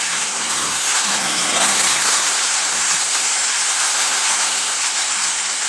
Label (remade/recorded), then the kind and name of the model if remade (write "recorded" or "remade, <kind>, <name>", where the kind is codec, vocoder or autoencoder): remade, codec, SNAC